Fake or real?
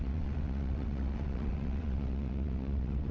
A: fake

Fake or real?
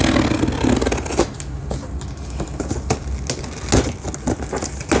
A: real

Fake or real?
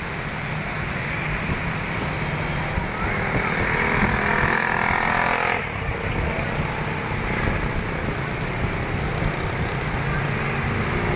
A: real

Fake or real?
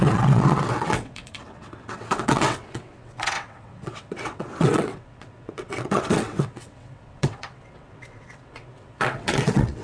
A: fake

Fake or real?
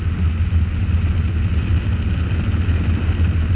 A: real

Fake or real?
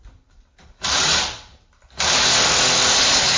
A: real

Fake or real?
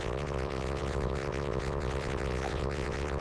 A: fake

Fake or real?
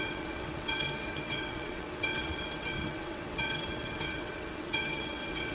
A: fake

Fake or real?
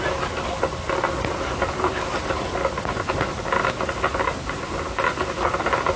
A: real